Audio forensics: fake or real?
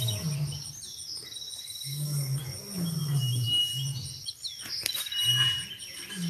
real